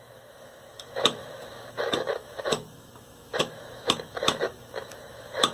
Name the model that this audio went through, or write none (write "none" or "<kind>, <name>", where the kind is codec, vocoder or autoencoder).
autoencoder, DAC-VAE